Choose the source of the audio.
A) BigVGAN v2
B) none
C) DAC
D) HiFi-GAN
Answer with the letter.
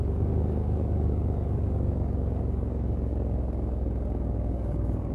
C